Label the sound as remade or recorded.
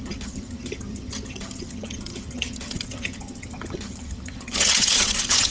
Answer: remade